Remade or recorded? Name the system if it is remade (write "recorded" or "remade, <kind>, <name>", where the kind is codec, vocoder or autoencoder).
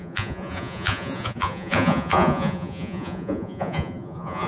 remade, vocoder, Vocos